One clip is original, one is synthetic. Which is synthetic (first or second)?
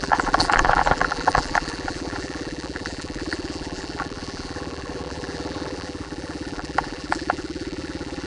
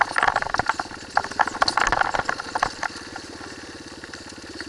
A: first